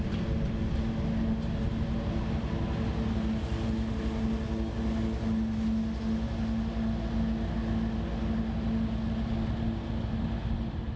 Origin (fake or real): real